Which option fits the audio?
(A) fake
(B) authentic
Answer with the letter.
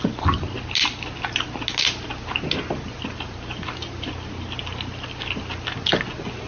B